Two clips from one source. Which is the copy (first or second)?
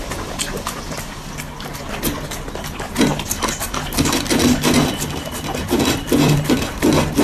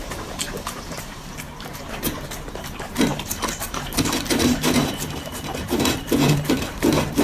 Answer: second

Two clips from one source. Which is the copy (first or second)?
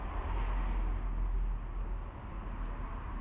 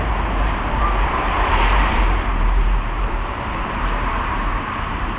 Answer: second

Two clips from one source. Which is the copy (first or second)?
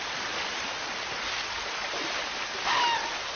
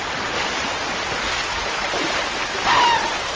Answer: second